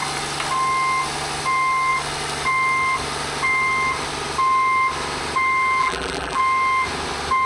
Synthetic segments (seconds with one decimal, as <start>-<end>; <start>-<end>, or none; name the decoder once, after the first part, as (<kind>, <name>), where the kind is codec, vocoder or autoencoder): 5.8-6.4 (vocoder, BigVGAN v2)